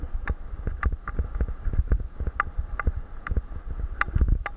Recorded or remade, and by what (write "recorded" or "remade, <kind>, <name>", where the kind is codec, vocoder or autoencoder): recorded